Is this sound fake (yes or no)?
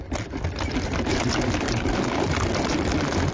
no